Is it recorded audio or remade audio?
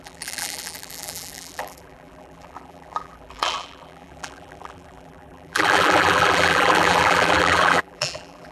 remade